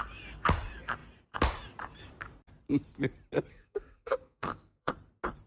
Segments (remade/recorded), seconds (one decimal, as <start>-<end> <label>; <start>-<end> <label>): 0.0-3.5 recorded; 3.5-4.9 remade; 4.9-5.5 recorded